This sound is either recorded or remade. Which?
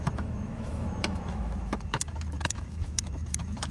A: remade